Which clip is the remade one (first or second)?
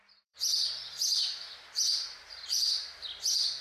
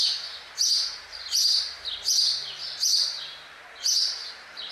first